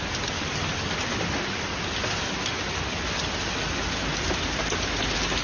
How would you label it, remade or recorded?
recorded